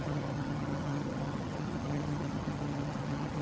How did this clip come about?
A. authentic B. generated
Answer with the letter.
B